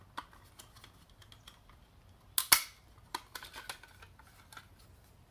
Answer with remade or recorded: recorded